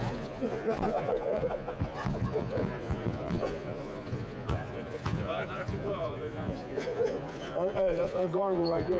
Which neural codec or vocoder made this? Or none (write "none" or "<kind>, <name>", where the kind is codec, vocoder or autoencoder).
vocoder, Vocos